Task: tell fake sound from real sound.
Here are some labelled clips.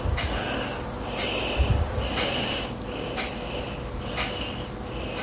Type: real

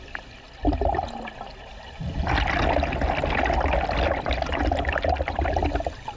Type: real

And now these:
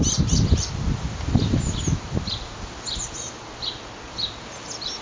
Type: real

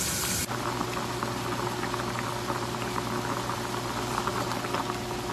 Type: real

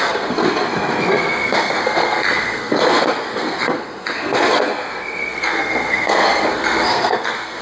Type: fake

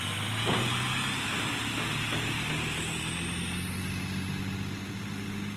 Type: real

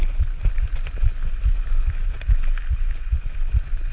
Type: real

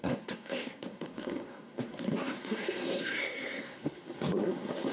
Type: fake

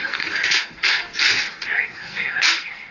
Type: fake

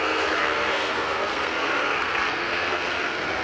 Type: fake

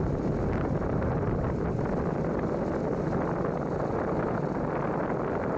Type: real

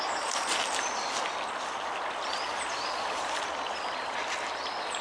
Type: real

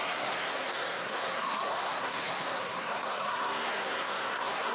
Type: fake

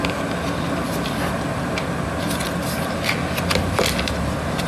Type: real